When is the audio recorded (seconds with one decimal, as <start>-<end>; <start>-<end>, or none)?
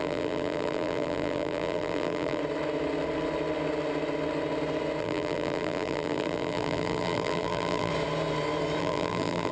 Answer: 2.4-5.0; 7.9-8.8